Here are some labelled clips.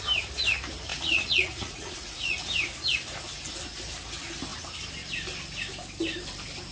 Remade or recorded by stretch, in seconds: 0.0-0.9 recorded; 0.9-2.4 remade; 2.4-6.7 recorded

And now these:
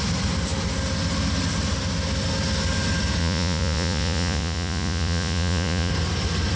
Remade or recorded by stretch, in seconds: 0.0-3.2 recorded; 3.2-5.9 remade; 5.9-6.6 recorded

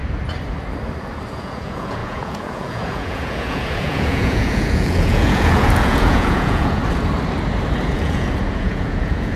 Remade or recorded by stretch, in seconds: 0.0-1.3 recorded; 1.3-6.8 remade; 6.8-7.9 recorded; 7.9-9.4 remade

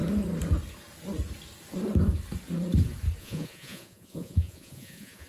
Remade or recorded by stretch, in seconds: 0.0-3.2 recorded; 3.2-5.3 remade

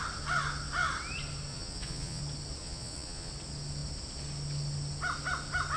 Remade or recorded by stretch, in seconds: 0.0-1.5 recorded; 1.5-2.2 remade; 2.2-2.6 recorded; 2.6-3.3 remade; 3.3-5.8 recorded

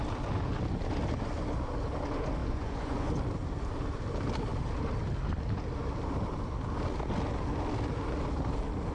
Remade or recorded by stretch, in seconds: 0.0-2.4 recorded; 2.4-3.1 remade; 3.1-8.9 recorded